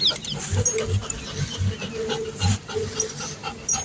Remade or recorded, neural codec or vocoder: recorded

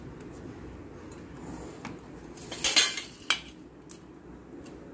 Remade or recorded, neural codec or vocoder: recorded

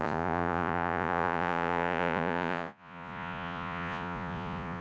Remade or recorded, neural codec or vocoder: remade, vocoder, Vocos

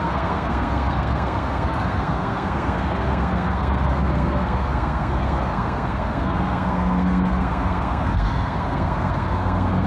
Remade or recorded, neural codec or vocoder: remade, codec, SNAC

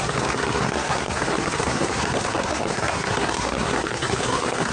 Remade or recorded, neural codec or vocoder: remade, codec, SNAC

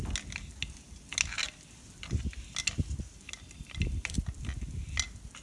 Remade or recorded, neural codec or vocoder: recorded